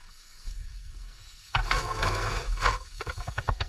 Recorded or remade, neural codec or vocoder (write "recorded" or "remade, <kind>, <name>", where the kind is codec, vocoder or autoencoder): remade, codec, SNAC